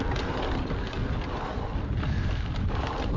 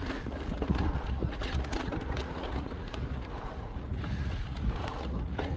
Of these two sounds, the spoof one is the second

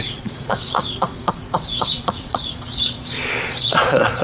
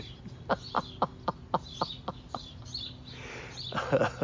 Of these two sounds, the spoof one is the first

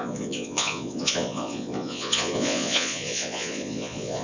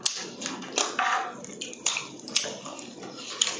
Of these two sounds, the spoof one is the first